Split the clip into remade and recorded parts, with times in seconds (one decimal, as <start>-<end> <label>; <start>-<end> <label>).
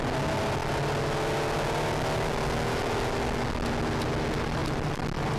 0.0-4.6 recorded; 4.6-5.4 remade